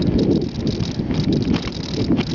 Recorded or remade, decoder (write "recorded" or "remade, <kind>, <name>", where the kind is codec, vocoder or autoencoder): recorded